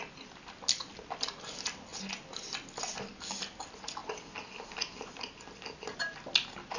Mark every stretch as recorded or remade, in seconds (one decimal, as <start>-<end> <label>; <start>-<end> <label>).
0.0-6.8 recorded